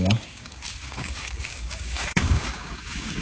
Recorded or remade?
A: remade